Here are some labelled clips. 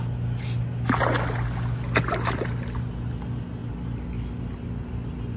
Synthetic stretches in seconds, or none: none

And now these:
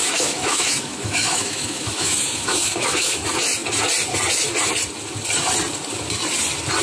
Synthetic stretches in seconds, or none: 0.0-3.1 (autoencoder, DAC-VAE)

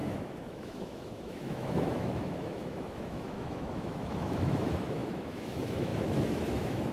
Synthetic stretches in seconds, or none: 0.0-6.9 (autoencoder, DAC-VAE)

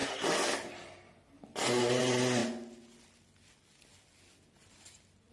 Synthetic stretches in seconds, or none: none

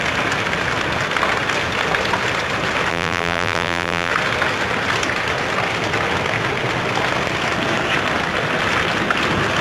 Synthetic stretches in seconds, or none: 2.9-4.1 (vocoder, BigVGAN v2)

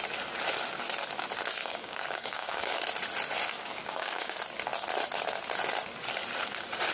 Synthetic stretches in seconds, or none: 1.6-2.8 (codec, DAC); 3.5-4.3